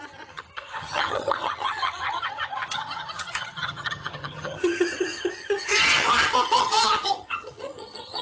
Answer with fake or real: fake